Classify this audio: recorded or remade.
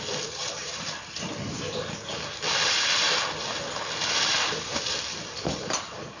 remade